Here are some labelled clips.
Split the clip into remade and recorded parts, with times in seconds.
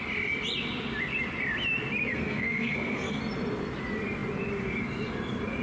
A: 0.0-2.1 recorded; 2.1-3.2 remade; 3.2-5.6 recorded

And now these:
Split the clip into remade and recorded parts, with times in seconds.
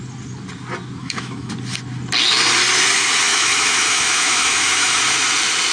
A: 0.0-1.0 recorded; 1.0-1.5 remade; 1.5-3.3 recorded; 3.3-5.0 remade; 5.0-5.7 recorded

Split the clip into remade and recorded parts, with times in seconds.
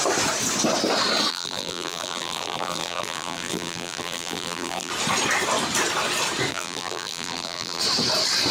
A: 0.0-1.3 recorded; 1.3-4.9 remade; 4.9-6.5 recorded; 6.5-7.8 remade; 7.8-8.5 recorded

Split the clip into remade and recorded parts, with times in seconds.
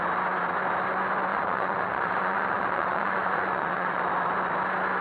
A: 0.0-1.3 recorded; 1.3-4.0 remade; 4.0-5.0 recorded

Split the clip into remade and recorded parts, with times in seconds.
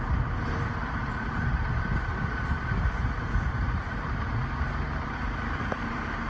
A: 0.0-2.1 recorded; 2.1-6.3 remade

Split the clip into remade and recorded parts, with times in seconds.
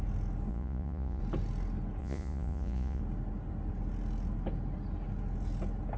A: 0.0-0.5 recorded; 0.5-1.2 remade; 1.2-2.0 recorded; 2.0-3.0 remade; 3.0-6.0 recorded